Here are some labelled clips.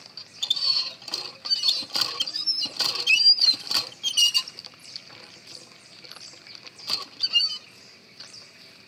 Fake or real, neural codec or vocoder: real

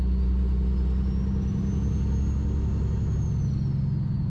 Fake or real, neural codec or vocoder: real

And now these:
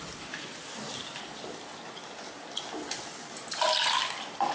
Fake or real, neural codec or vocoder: real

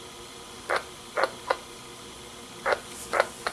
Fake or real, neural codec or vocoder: fake, vocoder, Vocos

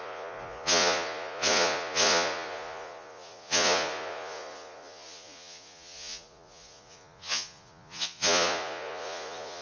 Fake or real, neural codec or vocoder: fake, vocoder, Vocos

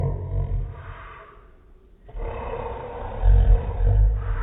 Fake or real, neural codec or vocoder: real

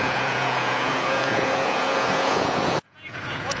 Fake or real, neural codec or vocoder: fake, vocoder, Vocos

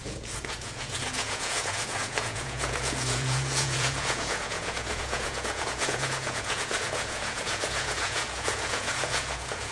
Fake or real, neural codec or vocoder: fake, vocoder, Vocos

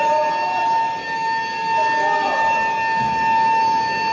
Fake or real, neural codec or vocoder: real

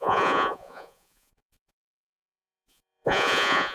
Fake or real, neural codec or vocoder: fake, vocoder, Vocos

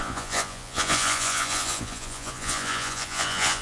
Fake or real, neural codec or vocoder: fake, vocoder, Vocos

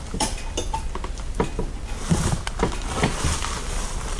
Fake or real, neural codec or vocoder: real